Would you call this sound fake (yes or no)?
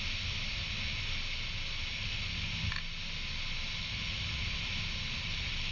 no